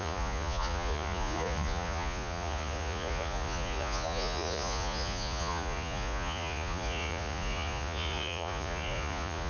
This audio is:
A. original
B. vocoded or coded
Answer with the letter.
B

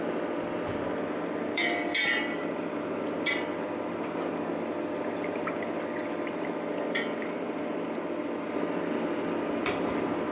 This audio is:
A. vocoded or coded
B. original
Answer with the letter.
A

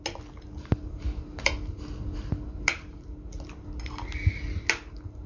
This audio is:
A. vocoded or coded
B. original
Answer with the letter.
B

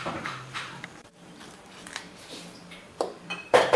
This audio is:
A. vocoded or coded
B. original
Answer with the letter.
A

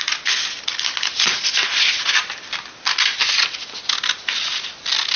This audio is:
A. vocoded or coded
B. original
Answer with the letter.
B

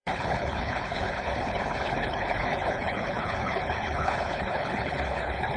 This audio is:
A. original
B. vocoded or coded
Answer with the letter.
B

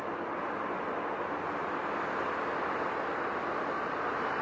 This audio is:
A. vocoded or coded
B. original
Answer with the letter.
B